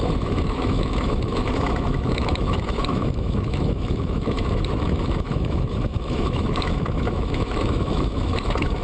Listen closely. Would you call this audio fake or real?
fake